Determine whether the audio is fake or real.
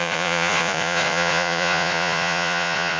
fake